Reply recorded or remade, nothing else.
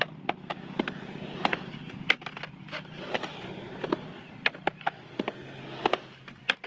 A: recorded